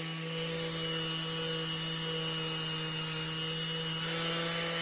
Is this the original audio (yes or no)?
yes